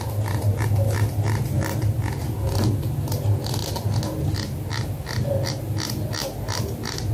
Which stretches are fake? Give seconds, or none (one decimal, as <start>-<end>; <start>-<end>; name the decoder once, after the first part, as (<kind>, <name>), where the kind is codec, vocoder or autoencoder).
none